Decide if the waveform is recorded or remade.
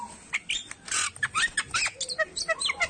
recorded